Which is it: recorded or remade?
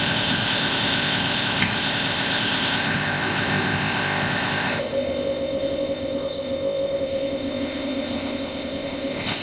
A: remade